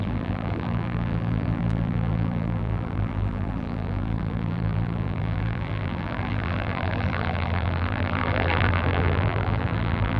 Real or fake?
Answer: fake